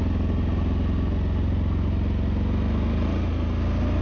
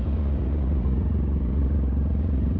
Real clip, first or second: first